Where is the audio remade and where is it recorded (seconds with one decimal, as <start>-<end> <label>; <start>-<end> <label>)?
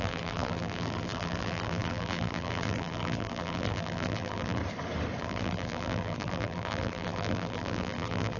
0.0-4.6 remade; 4.6-5.2 recorded; 5.2-8.4 remade